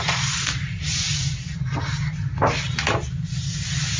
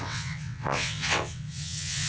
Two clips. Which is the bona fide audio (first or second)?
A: first